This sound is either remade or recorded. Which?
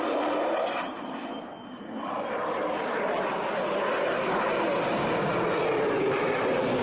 recorded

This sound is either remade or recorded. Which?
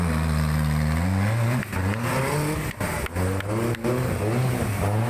recorded